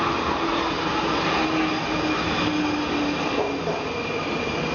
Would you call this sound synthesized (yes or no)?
no